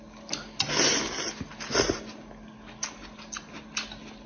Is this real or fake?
real